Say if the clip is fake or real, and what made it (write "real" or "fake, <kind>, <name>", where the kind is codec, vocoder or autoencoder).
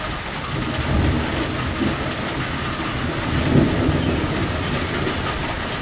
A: real